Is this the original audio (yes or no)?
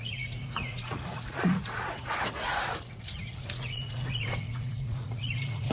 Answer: no